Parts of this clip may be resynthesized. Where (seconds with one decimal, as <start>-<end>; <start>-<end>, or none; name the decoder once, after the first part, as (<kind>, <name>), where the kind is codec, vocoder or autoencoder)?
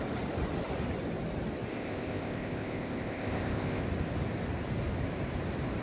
1.7-3.8 (codec, ZipCodec)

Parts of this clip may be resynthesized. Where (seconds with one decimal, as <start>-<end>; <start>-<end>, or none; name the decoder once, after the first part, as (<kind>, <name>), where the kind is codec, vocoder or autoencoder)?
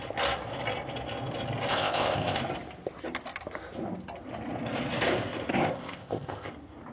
1.7-2.4 (codec, ZipCodec); 5.5-6.5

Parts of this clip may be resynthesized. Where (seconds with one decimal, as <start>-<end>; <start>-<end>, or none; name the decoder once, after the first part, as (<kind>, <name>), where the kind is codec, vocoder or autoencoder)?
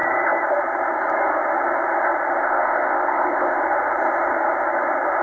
2.4-3.6 (codec, ZipCodec)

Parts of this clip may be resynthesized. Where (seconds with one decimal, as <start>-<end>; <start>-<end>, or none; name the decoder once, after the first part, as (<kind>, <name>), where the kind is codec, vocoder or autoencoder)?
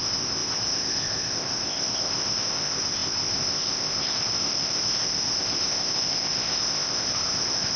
0.0-7.8 (codec, ZipCodec)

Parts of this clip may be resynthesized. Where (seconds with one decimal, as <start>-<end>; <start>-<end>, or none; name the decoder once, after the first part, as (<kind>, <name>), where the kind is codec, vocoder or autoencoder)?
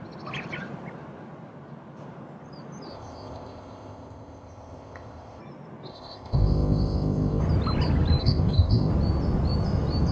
2.9-5.4 (codec, ZipCodec); 5.9-7.4; 8.2-8.9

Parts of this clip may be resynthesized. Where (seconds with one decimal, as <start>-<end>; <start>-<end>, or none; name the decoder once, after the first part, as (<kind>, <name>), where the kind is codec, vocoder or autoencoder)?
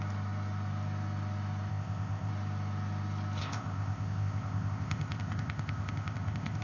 1.7-2.3 (codec, ZipCodec); 3.4-6.6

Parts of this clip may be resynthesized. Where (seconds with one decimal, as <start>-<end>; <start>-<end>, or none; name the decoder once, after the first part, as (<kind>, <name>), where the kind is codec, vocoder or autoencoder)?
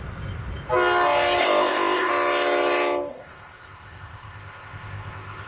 1.4-2.1 (codec, ZipCodec); 3.1-5.5